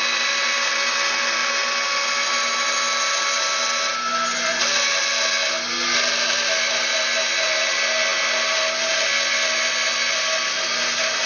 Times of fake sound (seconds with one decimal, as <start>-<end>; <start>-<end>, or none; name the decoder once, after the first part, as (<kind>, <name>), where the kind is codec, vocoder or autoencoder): none